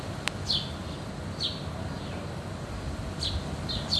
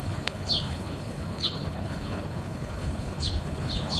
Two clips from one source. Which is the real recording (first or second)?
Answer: first